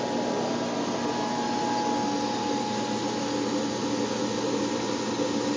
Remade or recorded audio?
recorded